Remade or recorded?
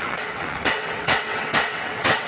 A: remade